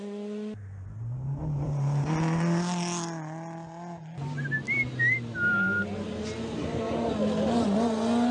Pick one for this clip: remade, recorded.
recorded